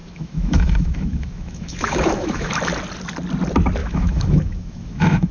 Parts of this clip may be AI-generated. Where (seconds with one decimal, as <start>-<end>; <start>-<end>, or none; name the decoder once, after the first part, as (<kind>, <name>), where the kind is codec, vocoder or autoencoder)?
0.0-2.5 (autoencoder, DAC-VAE); 3.8-5.3